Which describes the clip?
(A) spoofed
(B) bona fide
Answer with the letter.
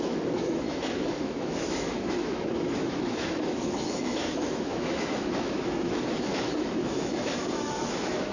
A